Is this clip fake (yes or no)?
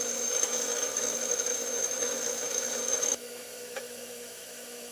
yes